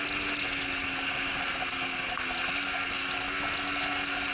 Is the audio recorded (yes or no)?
yes